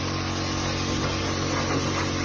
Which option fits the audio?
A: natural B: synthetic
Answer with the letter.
A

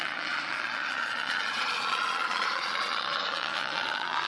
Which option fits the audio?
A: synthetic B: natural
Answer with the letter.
A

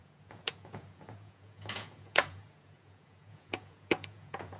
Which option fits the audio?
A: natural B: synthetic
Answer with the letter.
B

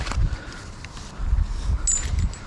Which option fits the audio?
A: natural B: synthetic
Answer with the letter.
A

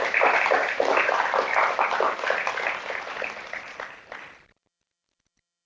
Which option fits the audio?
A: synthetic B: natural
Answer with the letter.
B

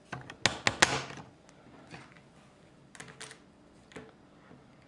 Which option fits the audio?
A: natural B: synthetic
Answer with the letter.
A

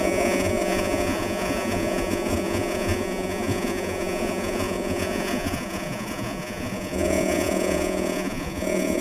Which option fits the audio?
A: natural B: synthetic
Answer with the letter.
B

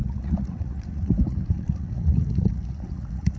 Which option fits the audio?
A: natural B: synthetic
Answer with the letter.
B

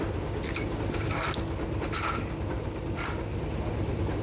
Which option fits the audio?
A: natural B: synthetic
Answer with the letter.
A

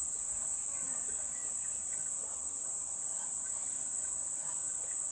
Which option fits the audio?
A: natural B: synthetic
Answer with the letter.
A